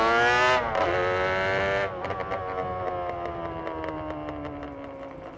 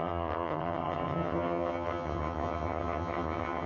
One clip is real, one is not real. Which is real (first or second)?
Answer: first